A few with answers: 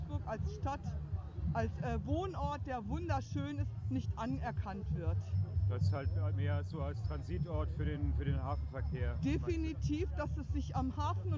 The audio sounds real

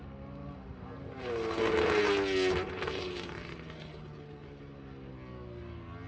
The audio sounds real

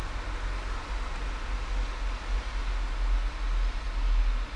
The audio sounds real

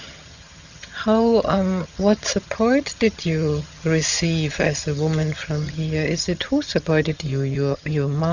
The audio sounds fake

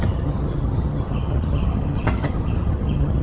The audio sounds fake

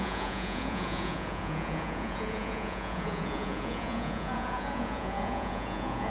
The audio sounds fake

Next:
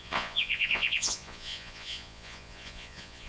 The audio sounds fake